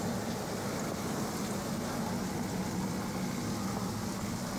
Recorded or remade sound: recorded